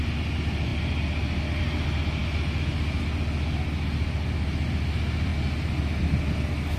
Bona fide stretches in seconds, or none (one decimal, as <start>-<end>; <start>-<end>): 0.0-6.8